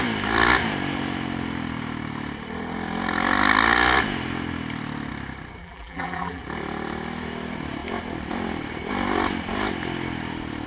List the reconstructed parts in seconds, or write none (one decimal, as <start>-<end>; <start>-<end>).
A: 5.6-6.4

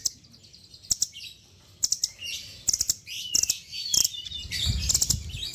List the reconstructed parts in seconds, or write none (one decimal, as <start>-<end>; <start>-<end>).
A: 3.9-4.9

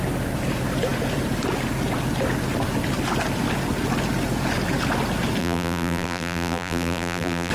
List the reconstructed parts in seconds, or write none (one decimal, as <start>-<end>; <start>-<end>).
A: 5.4-7.5